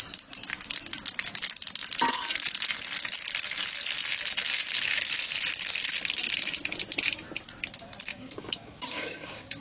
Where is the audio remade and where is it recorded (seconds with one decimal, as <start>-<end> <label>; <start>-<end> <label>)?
0.0-8.1 recorded; 8.1-9.6 remade